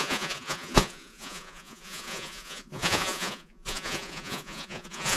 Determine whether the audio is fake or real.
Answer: fake